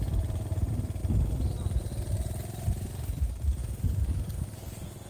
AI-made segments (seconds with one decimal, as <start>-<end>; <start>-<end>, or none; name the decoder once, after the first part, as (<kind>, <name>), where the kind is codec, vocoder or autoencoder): 3.6-5.1 (codec, DAC)